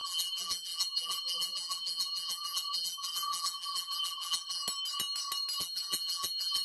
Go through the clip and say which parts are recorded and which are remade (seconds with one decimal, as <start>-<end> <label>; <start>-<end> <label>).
0.0-4.6 remade; 4.6-5.6 recorded; 5.6-6.6 remade